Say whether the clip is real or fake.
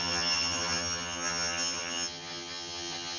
fake